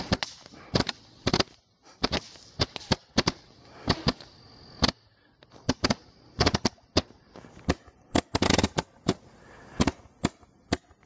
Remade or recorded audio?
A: recorded